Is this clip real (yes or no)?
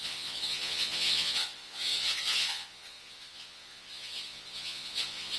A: no